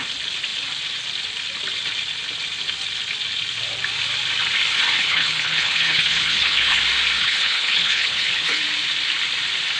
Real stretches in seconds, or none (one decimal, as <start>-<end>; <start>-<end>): 0.0-5.0; 6.8-7.2; 8.6-9.8